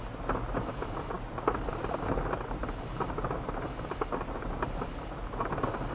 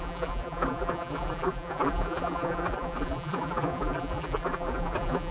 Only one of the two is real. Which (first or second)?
first